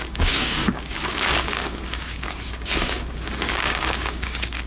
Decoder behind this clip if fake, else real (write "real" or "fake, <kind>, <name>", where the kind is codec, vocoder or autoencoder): fake, codec, DAC